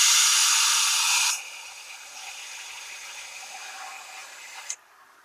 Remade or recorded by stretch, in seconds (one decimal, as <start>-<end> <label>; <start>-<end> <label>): 0.0-5.2 recorded